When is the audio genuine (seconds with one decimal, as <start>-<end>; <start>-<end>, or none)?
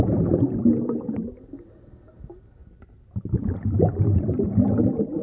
0.0-5.2